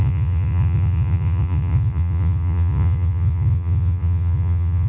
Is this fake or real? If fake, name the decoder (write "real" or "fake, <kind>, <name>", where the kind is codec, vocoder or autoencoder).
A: fake, vocoder, Vocos